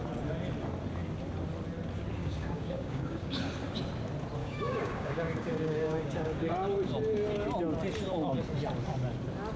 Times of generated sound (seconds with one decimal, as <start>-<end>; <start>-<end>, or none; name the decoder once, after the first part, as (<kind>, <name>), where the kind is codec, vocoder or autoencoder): 2.2-3.4 (codec, DAC); 4.4-6.5

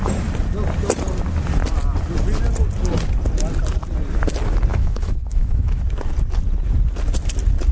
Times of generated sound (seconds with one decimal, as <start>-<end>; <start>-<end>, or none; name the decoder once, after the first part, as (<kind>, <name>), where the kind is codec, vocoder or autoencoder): 4.7-5.8 (autoencoder, DAC-VAE)